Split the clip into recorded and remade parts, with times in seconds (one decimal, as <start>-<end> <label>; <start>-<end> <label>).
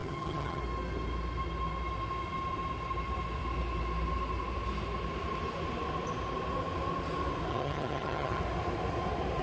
0.0-0.6 remade; 0.6-7.5 recorded; 7.5-8.4 remade; 8.4-9.4 recorded